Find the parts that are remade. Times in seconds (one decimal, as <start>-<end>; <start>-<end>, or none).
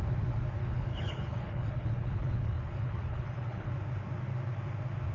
0.6-3.7